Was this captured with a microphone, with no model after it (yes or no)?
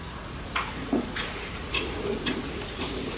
no